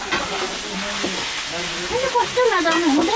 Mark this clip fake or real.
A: real